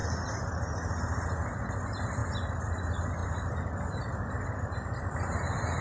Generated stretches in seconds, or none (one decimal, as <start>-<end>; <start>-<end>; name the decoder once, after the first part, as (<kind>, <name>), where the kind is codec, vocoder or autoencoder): 1.0-2.2 (vocoder, BigVGAN v2); 2.8-5.8

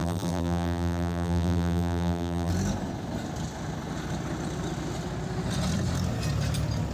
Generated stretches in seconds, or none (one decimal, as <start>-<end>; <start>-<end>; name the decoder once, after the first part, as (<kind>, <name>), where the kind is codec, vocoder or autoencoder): 0.0-2.5 (vocoder, BigVGAN v2)